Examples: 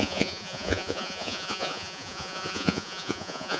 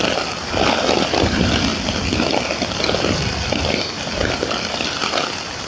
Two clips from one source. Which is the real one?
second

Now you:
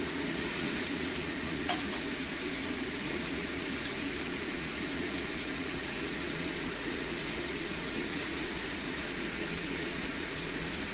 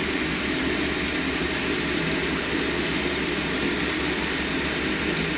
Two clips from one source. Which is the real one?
second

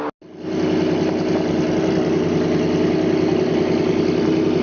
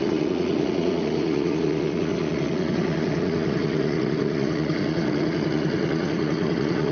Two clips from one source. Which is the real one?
first